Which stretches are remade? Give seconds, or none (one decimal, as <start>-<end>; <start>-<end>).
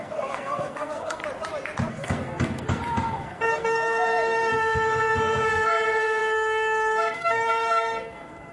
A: 0.0-1.2; 1.9-8.5